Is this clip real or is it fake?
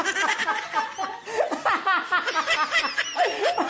real